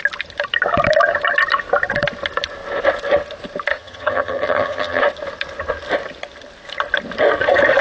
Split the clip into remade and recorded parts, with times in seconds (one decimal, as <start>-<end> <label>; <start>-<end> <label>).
0.0-3.7 recorded; 3.7-5.0 remade; 5.0-7.8 recorded